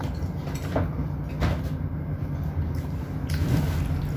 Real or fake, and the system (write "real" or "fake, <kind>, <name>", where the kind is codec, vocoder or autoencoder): real